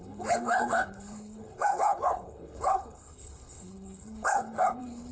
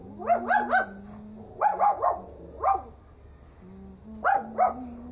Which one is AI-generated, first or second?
first